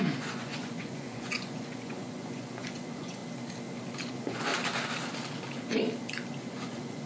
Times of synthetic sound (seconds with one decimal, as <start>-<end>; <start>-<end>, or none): 0.0-3.2; 4.1-4.5; 6.5-7.1